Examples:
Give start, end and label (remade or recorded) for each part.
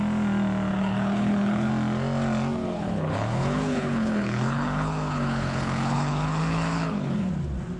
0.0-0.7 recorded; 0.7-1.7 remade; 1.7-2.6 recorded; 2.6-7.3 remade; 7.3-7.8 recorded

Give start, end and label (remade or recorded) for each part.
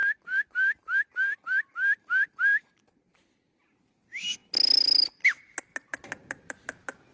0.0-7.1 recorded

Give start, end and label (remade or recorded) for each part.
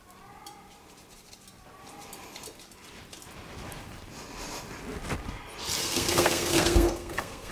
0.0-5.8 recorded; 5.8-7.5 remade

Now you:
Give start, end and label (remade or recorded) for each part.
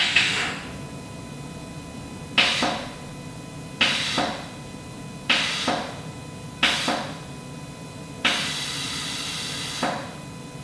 0.0-0.5 remade; 0.5-10.6 recorded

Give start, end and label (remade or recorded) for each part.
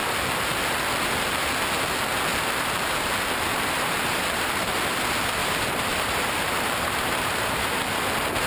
0.0-2.3 recorded; 2.3-2.9 remade; 2.9-3.5 recorded; 3.5-4.7 remade; 4.7-5.4 recorded; 5.4-8.0 remade; 8.0-8.5 recorded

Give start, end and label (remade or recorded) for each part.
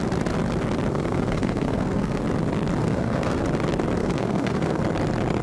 0.0-0.9 recorded; 0.9-2.2 remade; 2.2-2.8 recorded; 2.8-3.4 remade; 3.4-4.0 recorded; 4.0-4.8 remade; 4.8-5.4 recorded